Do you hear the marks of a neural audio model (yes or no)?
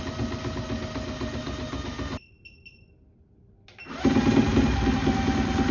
no